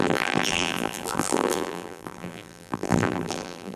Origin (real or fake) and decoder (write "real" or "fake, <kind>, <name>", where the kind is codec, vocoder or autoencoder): fake, vocoder, BigVGAN v2